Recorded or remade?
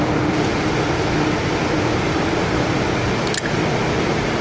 recorded